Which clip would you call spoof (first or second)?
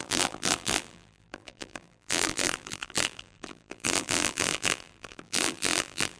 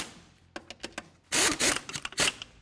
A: first